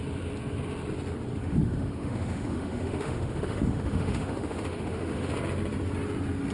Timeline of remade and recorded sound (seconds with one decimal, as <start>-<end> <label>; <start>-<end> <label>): 0.0-1.4 recorded; 1.4-5.3 remade; 5.3-6.5 recorded